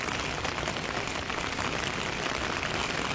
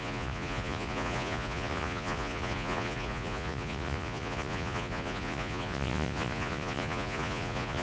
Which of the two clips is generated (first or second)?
second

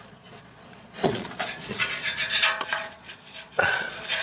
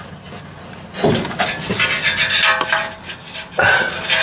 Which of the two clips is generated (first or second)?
first